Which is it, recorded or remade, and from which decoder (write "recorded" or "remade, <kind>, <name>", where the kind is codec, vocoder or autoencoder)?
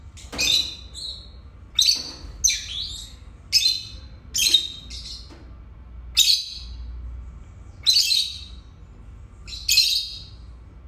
recorded